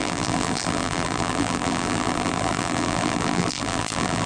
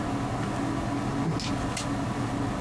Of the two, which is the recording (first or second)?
second